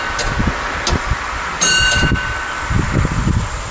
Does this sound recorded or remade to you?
recorded